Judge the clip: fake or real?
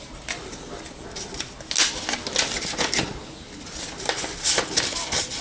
real